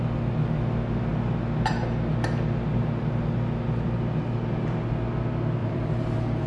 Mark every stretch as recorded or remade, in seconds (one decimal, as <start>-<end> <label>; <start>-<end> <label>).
0.0-5.6 recorded; 5.6-6.5 remade